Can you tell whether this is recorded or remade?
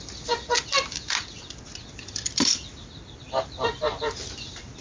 remade